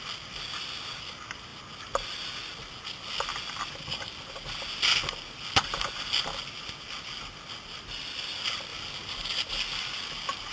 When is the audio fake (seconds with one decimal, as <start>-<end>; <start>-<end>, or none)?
none